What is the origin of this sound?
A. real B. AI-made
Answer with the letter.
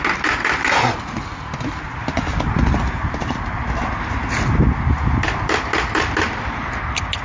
A